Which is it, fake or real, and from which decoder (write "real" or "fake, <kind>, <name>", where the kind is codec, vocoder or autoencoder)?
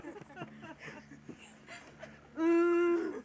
real